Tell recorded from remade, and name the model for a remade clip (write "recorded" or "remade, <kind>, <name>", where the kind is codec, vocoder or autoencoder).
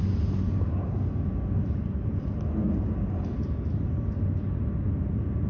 recorded